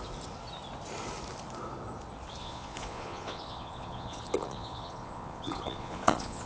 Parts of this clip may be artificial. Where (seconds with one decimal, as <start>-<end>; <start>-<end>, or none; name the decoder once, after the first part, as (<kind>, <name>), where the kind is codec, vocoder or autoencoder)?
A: 2.4-6.5 (vocoder, Vocos)